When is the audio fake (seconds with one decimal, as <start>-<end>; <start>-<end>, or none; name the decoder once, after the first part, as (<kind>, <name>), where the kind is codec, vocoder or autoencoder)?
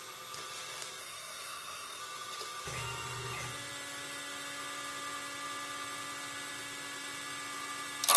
1.0-2.0 (codec, SNAC)